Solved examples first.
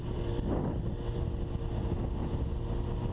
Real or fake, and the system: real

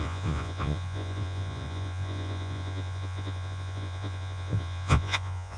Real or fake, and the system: fake, vocoder, Vocos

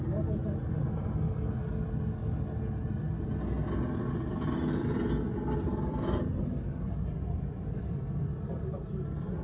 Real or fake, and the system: real